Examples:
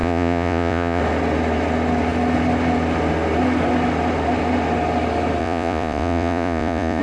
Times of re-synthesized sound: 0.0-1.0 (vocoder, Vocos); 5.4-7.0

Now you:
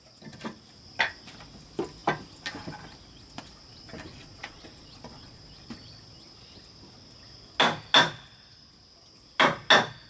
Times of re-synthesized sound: 4.1-5.4 (vocoder, Vocos)

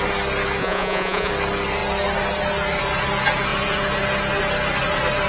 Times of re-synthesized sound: 0.6-1.3 (vocoder, Vocos)

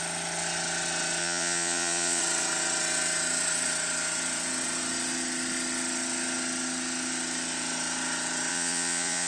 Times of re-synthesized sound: 1.2-2.2 (vocoder, Vocos); 8.5-9.3

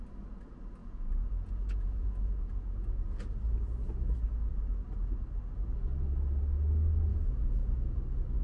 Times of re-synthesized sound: 0.8-3.1 (vocoder, Vocos); 7.1-8.0

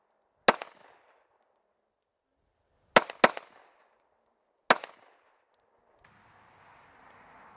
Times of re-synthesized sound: none

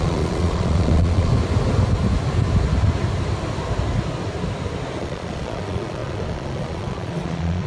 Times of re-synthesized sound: 0.0-1.3 (vocoder, Vocos); 5.0-7.7